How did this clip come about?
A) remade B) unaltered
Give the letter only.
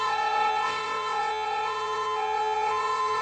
A